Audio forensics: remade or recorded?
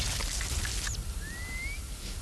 recorded